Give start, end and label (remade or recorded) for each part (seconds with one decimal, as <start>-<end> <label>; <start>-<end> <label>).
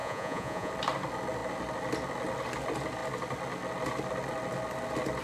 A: 0.0-0.7 remade; 0.7-5.2 recorded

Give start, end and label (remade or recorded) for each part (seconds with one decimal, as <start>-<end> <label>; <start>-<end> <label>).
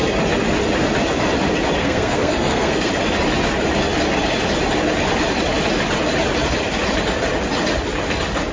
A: 0.0-1.8 recorded; 1.8-2.9 remade; 2.9-8.5 recorded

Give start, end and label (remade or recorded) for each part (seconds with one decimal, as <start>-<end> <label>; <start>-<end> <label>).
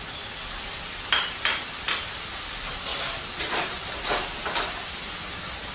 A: 0.0-2.9 remade; 2.9-3.4 recorded; 3.4-5.7 remade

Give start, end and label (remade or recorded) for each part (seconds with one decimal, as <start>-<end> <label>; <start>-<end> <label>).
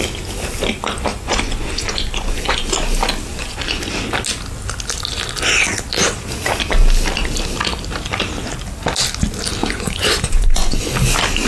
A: 0.0-1.1 recorded; 1.1-2.7 remade; 2.7-3.3 recorded; 3.3-3.9 remade; 3.9-9.6 recorded; 9.6-10.9 remade; 10.9-11.5 recorded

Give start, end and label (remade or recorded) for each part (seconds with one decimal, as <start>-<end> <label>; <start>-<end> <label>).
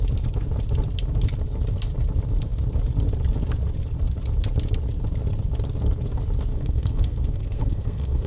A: 0.0-6.5 recorded; 6.5-8.3 remade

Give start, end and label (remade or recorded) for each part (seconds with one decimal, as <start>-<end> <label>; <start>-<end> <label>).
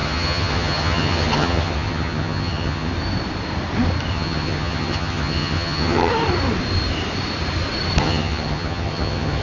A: 0.0-2.9 remade; 2.9-4.1 recorded; 4.1-6.1 remade; 6.1-8.0 recorded; 8.0-9.4 remade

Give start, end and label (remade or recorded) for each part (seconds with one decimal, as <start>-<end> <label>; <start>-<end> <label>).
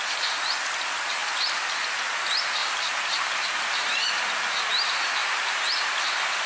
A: 0.0-2.6 recorded; 2.6-4.2 remade; 4.2-5.2 recorded; 5.2-5.9 remade; 5.9-6.5 recorded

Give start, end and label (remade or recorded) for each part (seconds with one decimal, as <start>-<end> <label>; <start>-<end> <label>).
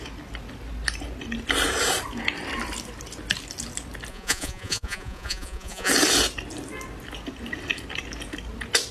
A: 0.0-4.1 recorded; 4.1-5.9 remade; 5.9-8.9 recorded